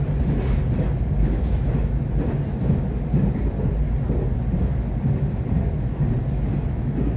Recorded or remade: recorded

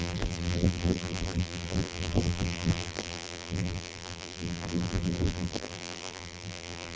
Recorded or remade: remade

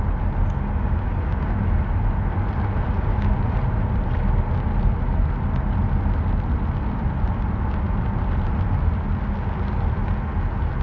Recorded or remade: recorded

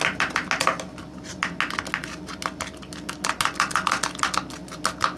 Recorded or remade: recorded